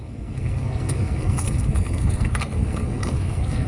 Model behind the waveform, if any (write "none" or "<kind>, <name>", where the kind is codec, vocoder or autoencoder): codec, SNAC